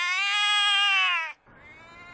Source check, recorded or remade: recorded